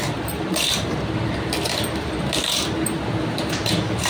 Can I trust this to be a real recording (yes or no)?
no